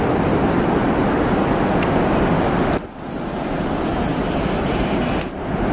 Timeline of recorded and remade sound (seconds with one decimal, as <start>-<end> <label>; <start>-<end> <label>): 0.0-0.8 remade; 0.8-3.4 recorded; 3.4-5.7 remade